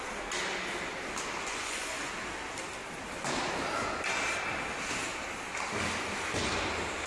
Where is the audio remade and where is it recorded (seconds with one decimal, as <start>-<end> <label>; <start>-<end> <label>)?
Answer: 0.0-1.5 recorded; 1.5-2.1 remade; 2.1-7.1 recorded